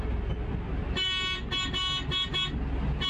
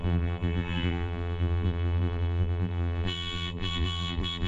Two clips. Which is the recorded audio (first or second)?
first